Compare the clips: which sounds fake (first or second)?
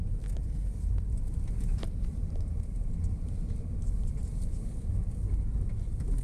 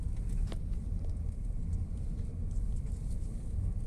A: first